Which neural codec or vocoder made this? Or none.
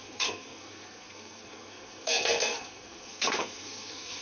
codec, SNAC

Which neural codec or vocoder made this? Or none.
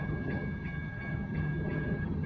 vocoder, HiFi-GAN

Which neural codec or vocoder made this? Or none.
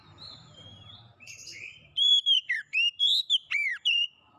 vocoder, BigVGAN v2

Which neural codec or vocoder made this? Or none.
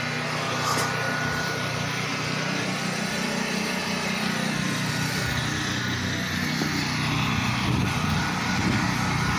none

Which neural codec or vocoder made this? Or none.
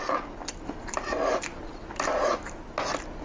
none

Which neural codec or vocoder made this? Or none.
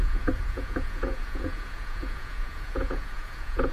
vocoder, Vocos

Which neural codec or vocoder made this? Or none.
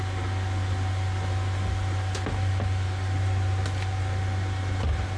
none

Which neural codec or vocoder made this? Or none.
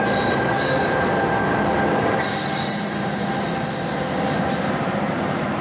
none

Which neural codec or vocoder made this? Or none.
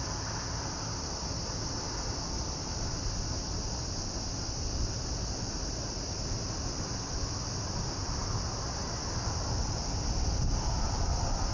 none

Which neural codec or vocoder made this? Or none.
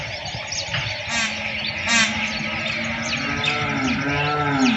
none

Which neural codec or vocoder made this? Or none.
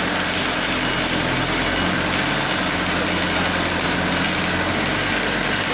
none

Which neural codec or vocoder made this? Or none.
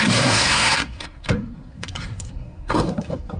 codec, SNAC